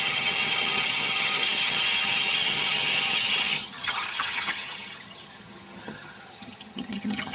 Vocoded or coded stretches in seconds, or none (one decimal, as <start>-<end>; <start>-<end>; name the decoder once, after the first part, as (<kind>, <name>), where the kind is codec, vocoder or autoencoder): 0.0-7.3 (vocoder, HiFi-GAN)